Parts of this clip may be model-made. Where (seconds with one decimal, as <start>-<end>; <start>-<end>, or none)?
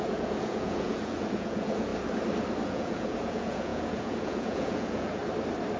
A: 0.0-1.9; 2.7-5.2